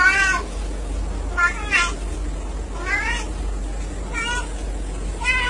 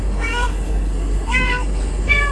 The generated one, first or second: second